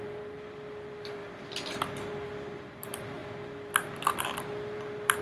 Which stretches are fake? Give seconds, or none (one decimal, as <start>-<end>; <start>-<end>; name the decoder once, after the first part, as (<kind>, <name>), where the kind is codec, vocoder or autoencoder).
0.0-3.2 (vocoder, BigVGAN v2); 4.2-5.2

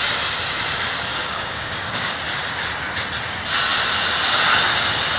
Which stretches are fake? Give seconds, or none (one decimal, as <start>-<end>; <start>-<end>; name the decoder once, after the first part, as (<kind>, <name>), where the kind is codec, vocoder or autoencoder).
1.1-2.2 (codec, DAC)

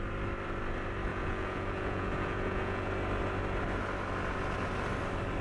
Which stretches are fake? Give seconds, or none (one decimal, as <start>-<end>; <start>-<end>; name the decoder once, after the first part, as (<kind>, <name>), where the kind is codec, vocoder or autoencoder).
1.1-2.9 (vocoder, Vocos)

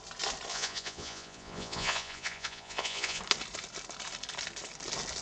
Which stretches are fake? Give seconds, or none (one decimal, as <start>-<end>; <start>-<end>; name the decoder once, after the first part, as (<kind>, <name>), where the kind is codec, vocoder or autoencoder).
0.5-3.2 (vocoder, Vocos)

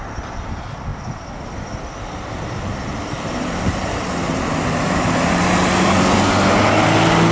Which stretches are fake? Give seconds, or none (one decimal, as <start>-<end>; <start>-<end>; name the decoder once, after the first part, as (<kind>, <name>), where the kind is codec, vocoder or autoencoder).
none